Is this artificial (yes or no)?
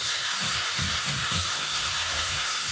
yes